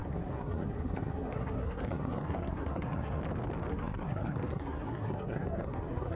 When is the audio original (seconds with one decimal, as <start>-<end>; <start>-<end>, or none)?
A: 3.2-3.7

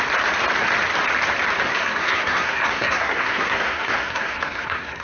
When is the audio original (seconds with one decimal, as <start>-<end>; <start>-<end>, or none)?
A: 0.0-1.7

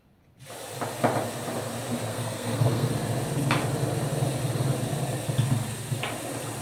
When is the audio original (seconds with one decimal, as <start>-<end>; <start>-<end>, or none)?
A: 0.0-2.1; 2.9-6.6